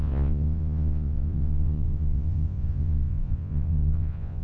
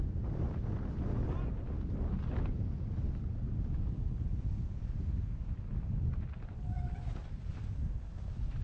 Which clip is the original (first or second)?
second